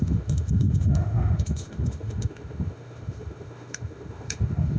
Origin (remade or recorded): remade